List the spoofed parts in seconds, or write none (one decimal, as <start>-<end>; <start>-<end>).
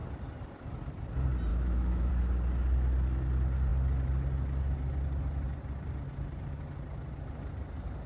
1.5-2.1